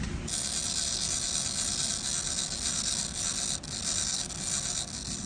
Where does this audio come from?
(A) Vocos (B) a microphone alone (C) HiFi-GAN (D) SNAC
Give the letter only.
B